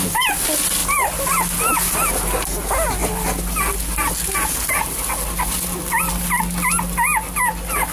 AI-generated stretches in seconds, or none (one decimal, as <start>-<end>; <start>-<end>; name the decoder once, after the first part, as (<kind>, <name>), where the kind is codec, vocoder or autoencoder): none

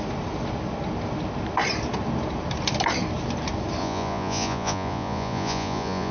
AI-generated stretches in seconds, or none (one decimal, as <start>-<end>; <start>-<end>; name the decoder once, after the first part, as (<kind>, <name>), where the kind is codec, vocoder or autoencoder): 3.8-6.1 (vocoder, Vocos)

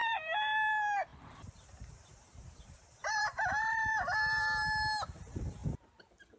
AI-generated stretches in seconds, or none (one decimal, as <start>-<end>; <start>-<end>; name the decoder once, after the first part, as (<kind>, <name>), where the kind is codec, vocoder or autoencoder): 0.0-0.7 (vocoder, BigVGAN v2); 1.1-4.4

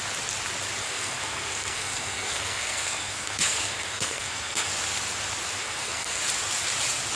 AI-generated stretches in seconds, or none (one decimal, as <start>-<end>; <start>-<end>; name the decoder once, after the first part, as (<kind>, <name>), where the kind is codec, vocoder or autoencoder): 0.8-4.7 (codec, SNAC); 5.6-6.2

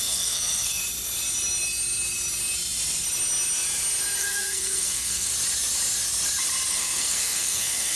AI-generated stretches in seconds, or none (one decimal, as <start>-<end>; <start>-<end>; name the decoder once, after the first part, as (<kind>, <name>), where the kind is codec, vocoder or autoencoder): 0.0-0.8 (codec, SNAC); 4.2-5.3; 6.7-8.0

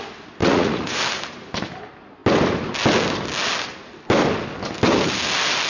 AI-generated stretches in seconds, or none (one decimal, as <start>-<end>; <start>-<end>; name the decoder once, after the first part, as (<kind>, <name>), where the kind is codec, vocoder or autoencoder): 0.4-1.0 (vocoder, Vocos)

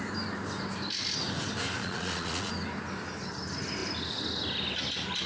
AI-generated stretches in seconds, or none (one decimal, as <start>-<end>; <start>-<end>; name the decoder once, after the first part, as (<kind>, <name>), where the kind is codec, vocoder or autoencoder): 1.8-2.5 (vocoder, Vocos)

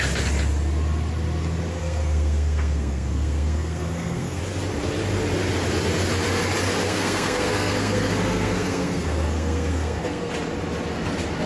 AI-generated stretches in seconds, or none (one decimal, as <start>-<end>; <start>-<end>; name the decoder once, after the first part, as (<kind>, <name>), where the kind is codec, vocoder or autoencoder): 1.8-4.4 (codec, SNAC); 6.8-10.3